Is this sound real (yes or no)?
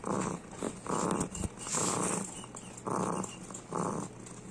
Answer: yes